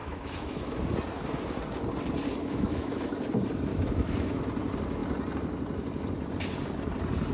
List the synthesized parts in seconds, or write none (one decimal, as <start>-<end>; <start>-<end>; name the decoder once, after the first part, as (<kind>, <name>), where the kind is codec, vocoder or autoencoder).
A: 0.0-0.8 (autoencoder, DAC-VAE); 2.4-3.1; 3.7-4.4